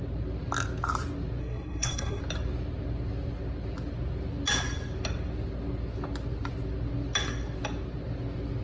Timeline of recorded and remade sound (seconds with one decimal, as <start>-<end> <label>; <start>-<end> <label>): 0.0-1.4 recorded; 1.4-2.2 remade; 2.2-8.6 recorded